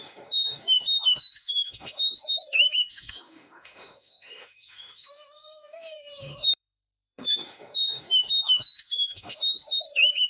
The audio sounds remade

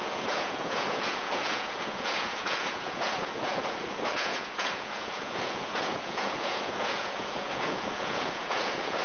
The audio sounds remade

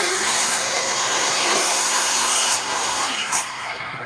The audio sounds remade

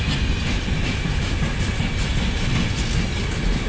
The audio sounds recorded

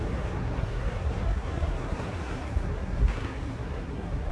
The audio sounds remade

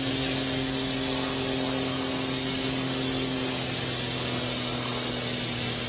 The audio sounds recorded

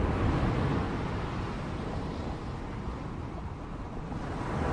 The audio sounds recorded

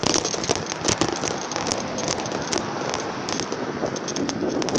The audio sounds recorded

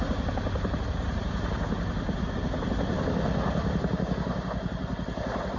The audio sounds recorded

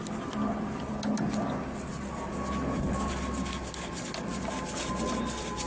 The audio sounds recorded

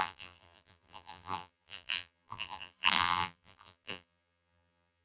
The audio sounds remade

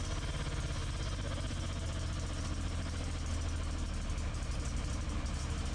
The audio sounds recorded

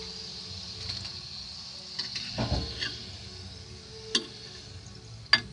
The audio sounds recorded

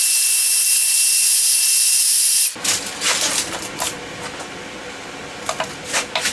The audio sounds recorded